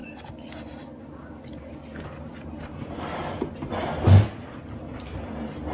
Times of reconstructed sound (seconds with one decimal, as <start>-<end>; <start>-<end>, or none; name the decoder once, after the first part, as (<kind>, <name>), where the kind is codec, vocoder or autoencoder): none